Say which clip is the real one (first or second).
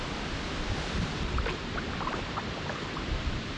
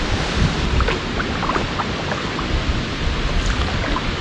second